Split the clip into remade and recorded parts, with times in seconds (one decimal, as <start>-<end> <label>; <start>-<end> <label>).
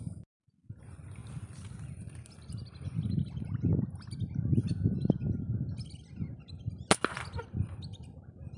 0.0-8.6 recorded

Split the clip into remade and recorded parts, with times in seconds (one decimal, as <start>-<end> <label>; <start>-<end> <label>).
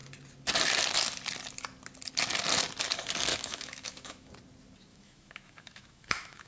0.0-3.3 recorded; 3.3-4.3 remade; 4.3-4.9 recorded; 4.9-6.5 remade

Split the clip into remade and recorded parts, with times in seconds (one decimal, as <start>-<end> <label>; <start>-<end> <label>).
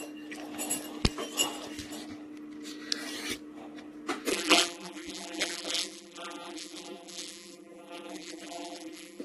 0.0-4.3 recorded; 4.3-9.2 remade